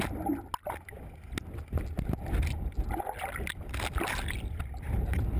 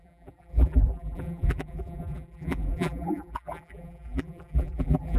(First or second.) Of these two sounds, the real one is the first